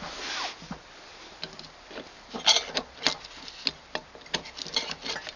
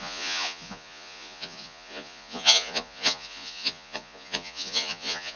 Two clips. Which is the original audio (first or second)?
first